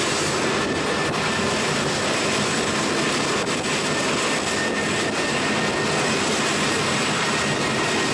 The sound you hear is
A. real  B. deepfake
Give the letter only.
A